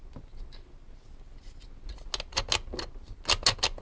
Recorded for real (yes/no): yes